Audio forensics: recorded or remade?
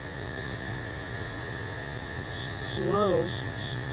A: remade